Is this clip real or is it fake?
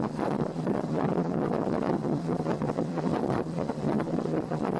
fake